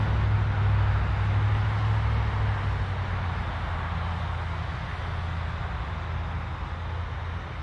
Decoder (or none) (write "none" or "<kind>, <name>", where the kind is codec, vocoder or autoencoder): none